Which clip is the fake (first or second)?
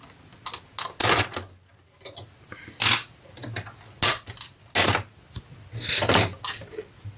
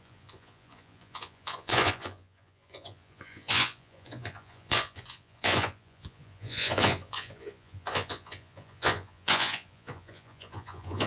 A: second